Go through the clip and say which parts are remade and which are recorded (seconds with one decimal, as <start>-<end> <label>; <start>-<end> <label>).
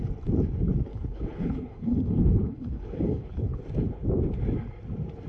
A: 0.0-0.9 recorded; 0.9-3.6 remade; 3.6-5.3 recorded